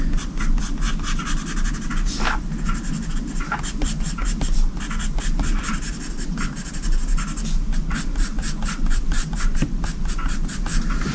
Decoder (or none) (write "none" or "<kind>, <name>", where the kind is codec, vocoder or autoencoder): none